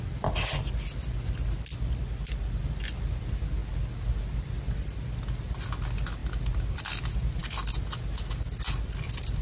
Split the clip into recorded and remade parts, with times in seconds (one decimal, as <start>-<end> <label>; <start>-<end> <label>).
0.0-1.7 recorded; 1.7-2.6 remade; 2.6-6.2 recorded; 6.2-6.8 remade; 6.8-9.4 recorded